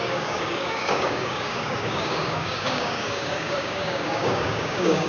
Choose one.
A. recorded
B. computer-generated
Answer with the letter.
B